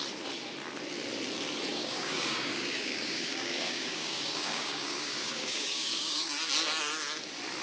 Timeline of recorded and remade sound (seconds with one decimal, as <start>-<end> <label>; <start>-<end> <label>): 0.0-1.7 recorded; 1.7-6.3 remade; 6.3-7.6 recorded